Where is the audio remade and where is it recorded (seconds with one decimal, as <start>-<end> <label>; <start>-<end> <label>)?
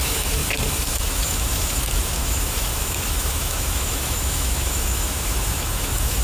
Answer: 0.0-0.4 remade; 0.4-0.9 recorded; 0.9-6.2 remade